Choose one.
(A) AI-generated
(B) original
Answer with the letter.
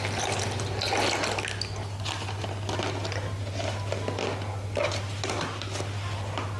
B